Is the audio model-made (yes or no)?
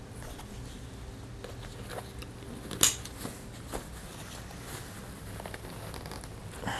no